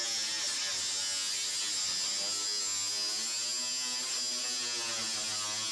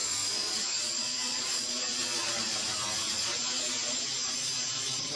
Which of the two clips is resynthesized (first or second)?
second